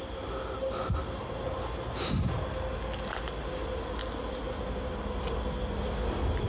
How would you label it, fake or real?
real